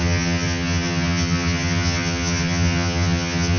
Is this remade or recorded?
remade